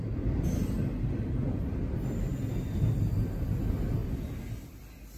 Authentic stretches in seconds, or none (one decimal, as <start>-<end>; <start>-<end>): 0.0-5.2